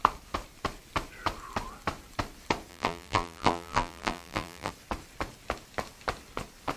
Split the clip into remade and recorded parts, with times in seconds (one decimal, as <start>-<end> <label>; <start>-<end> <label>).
0.0-2.7 recorded; 2.7-4.7 remade; 4.7-6.8 recorded